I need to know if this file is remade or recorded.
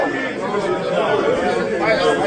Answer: recorded